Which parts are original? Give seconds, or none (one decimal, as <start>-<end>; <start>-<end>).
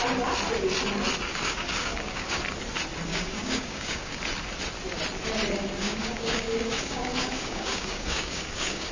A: 0.0-1.3; 2.4-3.1; 4.2-5.8